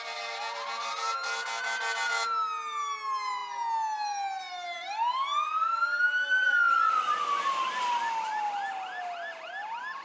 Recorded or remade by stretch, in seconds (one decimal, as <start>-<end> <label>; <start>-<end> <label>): 0.0-10.0 recorded